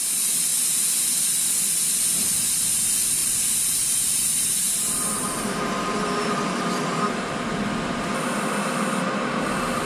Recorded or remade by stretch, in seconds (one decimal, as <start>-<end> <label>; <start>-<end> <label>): 0.0-0.5 recorded; 0.5-1.0 remade; 1.0-3.2 recorded; 3.2-7.4 remade; 7.4-9.9 recorded

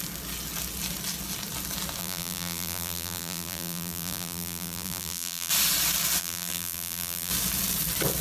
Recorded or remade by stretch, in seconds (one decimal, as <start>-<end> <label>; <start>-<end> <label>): 0.0-2.0 recorded; 2.0-5.5 remade; 5.5-6.2 recorded; 6.2-7.3 remade; 7.3-8.2 recorded

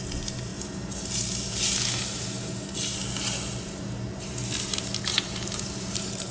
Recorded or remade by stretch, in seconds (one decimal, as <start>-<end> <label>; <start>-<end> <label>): 0.0-3.0 remade; 3.0-3.6 recorded; 3.6-6.3 remade